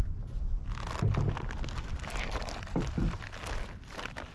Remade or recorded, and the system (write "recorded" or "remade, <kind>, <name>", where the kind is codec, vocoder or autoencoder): recorded